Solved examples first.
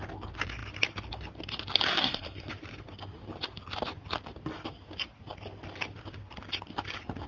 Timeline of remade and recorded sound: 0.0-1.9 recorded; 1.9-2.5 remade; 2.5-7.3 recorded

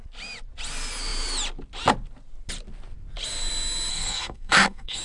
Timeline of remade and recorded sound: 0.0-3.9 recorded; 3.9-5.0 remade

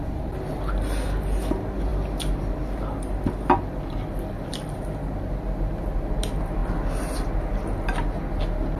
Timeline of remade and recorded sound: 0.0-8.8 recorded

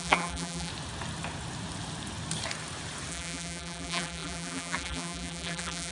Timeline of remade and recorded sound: 0.0-0.7 remade; 0.7-3.1 recorded; 3.1-5.9 remade

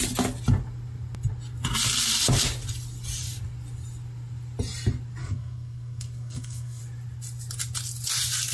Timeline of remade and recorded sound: 0.0-5.2 recorded; 5.2-6.8 remade; 6.8-8.5 recorded